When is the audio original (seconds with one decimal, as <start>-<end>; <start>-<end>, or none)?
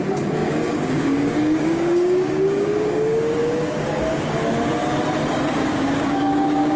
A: 0.0-0.4; 4.5-5.6